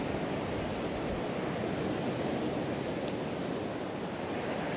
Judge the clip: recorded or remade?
recorded